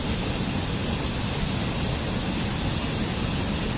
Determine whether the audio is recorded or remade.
recorded